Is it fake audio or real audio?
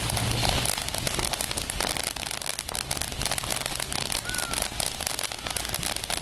real